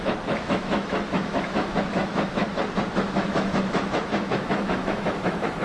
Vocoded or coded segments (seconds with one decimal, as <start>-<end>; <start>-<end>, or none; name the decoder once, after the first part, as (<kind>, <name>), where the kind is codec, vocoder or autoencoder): 0.0-2.4 (autoencoder, DAC-VAE); 2.9-5.6

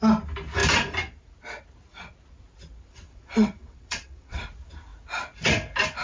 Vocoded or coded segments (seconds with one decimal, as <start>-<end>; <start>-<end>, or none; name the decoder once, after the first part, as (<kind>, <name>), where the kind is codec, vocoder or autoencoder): 2.9-4.4 (vocoder, WaveNeXt)

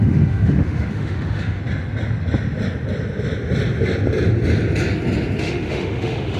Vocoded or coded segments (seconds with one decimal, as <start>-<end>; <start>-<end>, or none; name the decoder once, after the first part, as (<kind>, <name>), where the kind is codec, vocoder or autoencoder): 0.0-1.6 (autoencoder, DAC-VAE); 5.4-6.4

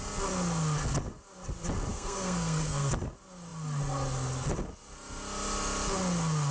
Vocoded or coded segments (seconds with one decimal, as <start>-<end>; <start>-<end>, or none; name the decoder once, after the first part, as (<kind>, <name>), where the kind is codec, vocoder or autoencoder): 1.9-2.9 (codec, SNAC)

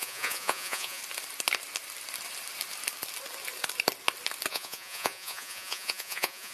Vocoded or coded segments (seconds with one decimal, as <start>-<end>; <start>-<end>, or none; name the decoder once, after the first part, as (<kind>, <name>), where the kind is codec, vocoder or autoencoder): 0.0-1.0 (vocoder, Vocos); 4.5-6.5

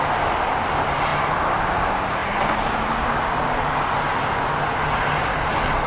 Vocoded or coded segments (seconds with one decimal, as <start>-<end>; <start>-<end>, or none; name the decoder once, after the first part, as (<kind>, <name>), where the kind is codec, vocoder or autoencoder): 2.2-2.9 (vocoder, BigVGAN v2)

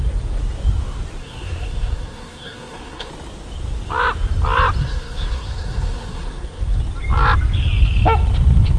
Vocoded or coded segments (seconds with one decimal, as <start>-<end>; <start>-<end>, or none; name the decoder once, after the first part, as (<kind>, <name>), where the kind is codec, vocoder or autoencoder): 1.2-3.1 (codec, SNAC); 4.8-6.8